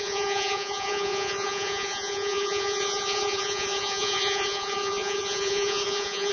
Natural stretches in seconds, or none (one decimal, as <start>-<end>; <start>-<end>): none